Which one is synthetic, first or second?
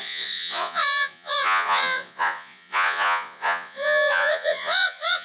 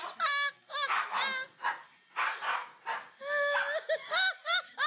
first